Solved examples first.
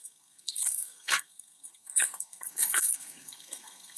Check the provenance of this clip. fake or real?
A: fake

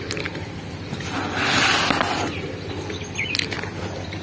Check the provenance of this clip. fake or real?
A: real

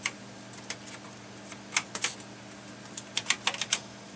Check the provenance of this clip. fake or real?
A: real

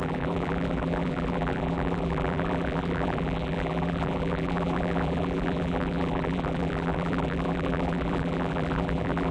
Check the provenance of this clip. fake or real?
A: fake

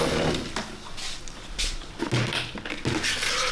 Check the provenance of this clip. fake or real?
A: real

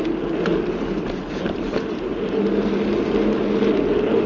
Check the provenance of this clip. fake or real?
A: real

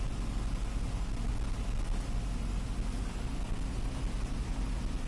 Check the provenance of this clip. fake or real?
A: real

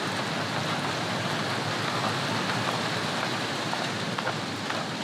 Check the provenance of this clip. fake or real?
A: real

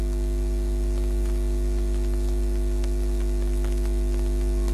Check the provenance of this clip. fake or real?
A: real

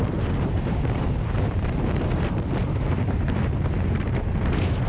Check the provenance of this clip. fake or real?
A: fake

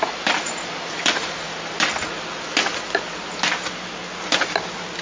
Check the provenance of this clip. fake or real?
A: real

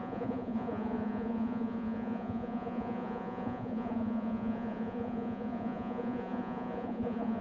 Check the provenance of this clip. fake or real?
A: fake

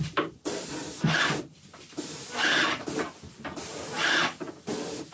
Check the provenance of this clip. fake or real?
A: real